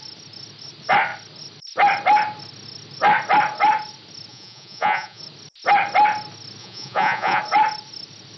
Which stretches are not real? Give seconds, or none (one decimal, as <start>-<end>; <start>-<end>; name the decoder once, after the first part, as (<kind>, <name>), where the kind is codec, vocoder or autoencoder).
4.3-5.2 (vocoder, Vocos); 6.6-7.4